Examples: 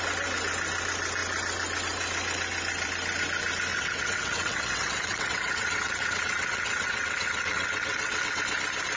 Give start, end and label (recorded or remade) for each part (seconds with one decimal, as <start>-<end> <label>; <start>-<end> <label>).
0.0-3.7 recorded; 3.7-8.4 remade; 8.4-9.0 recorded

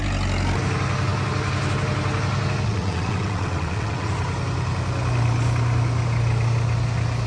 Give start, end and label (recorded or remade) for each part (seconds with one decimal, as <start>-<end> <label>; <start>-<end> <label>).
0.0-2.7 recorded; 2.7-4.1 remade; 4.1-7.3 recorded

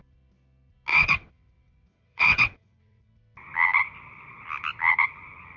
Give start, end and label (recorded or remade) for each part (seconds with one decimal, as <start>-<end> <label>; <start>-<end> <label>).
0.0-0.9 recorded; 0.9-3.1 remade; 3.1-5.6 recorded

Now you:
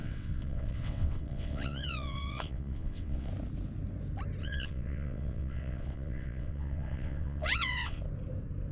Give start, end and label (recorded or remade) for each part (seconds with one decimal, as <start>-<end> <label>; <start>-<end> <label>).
0.0-3.3 remade; 3.3-4.4 recorded; 4.4-8.0 remade; 8.0-8.7 recorded

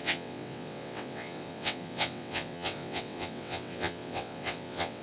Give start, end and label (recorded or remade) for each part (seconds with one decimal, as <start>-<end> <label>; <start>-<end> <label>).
0.0-5.0 remade

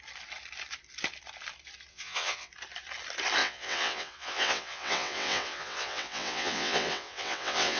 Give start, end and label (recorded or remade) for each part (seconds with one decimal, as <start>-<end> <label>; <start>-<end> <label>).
0.0-1.9 recorded; 1.9-2.5 remade; 2.5-3.4 recorded; 3.4-7.8 remade

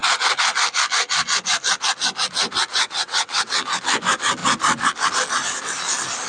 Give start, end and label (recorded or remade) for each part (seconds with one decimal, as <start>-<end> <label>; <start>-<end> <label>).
0.0-2.7 recorded; 2.7-3.5 remade; 3.5-6.3 recorded